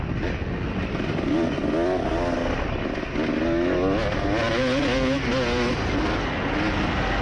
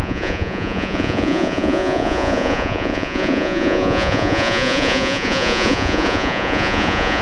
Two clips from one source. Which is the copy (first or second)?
second